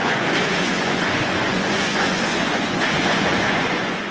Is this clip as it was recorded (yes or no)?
no